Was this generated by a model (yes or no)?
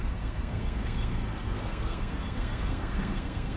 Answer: yes